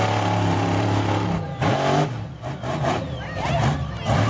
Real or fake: real